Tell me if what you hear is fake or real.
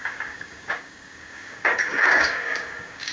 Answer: fake